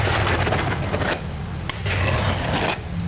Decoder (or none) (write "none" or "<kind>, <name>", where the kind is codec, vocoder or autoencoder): none